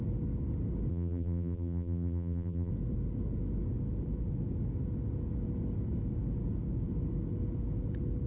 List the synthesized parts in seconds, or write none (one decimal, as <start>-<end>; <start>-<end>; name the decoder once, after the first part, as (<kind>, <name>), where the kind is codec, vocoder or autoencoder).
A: 0.9-2.7 (vocoder, BigVGAN v2)